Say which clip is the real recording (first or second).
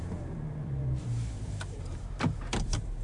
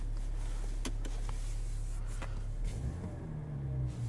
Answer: second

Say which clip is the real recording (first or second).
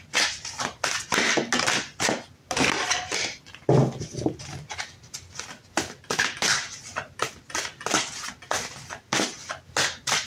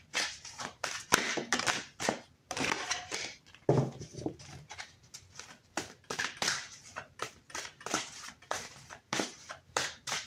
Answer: first